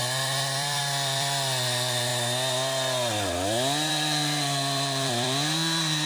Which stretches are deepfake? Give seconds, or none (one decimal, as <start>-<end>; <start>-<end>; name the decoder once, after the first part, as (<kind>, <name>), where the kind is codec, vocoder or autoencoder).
0.0-2.1 (vocoder, BigVGAN v2); 3.9-6.1